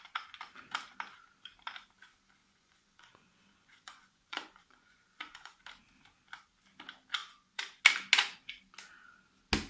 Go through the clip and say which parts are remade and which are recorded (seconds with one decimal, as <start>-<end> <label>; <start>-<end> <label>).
0.0-2.4 recorded; 2.4-5.6 remade; 5.6-7.2 recorded; 7.2-7.8 remade; 7.8-9.7 recorded